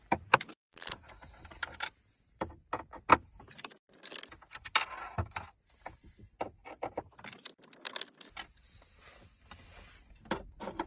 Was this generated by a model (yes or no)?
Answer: no